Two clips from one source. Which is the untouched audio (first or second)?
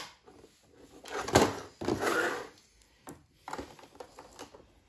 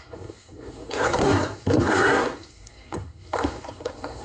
first